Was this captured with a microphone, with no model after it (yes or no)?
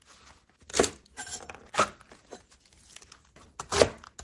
yes